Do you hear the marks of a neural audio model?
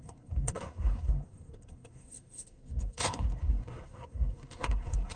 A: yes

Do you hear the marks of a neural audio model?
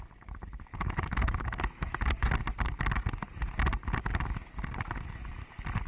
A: no